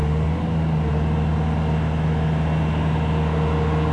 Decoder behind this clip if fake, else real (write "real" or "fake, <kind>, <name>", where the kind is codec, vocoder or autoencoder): real